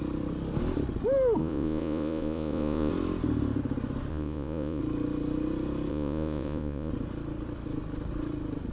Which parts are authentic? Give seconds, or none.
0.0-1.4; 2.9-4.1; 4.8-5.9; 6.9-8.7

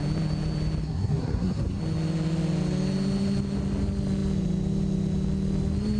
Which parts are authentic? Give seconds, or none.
0.0-0.8; 1.8-6.0